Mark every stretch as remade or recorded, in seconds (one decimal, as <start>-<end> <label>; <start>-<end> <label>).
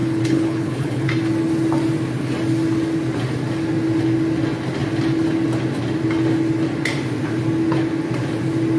0.0-1.1 remade; 1.1-8.8 recorded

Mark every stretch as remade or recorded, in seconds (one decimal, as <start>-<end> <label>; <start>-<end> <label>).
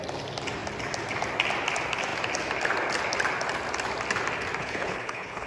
0.0-4.6 recorded; 4.6-5.5 remade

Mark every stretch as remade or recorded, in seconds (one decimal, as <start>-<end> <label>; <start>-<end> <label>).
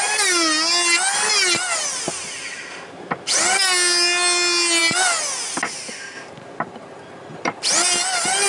0.0-8.5 recorded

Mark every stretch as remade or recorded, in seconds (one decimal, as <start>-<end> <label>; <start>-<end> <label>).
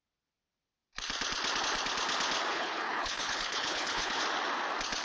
0.0-2.5 recorded; 2.5-4.2 remade; 4.2-5.0 recorded